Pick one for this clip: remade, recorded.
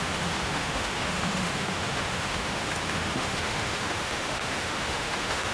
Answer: remade